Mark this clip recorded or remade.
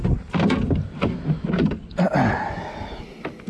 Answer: recorded